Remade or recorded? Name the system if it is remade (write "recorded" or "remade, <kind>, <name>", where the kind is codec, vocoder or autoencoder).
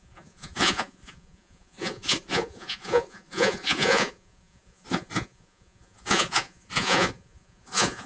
remade, vocoder, Vocos